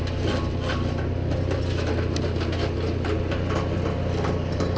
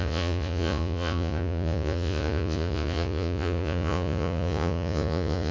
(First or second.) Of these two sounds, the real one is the first